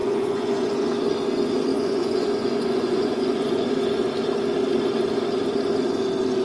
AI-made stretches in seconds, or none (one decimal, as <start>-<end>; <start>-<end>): 0.0-0.9; 1.7-3.7